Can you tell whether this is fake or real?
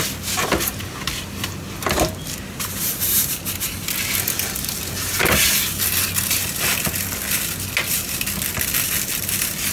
real